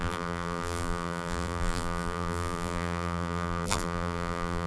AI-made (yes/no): yes